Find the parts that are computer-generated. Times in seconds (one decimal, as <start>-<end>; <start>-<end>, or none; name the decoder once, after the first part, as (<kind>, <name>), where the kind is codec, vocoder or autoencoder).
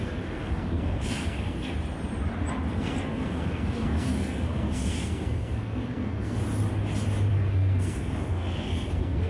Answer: 0.0-1.7 (codec, SNAC); 2.7-6.4; 7.3-9.3